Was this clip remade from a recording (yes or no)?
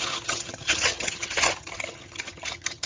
yes